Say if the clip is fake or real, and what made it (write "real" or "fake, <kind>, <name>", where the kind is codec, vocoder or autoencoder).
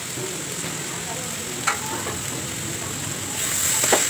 real